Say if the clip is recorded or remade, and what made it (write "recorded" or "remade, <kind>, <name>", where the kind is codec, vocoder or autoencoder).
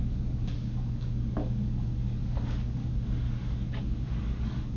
remade, codec, DAC